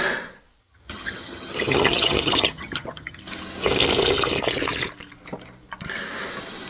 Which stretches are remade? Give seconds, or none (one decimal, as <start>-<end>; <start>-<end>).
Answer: 0.6-3.2